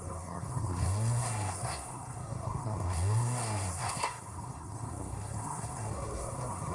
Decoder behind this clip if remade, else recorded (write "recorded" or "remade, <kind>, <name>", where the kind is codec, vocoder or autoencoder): remade, codec, SNAC